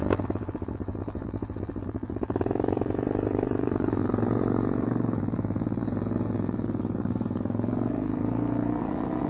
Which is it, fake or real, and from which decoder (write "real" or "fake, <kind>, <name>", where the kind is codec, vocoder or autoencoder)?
fake, vocoder, BigVGAN v2